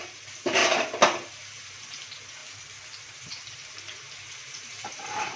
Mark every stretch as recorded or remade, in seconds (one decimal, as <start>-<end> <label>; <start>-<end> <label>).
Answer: 0.0-0.6 remade; 0.6-1.3 recorded; 1.3-2.4 remade; 2.4-3.0 recorded; 3.0-5.4 remade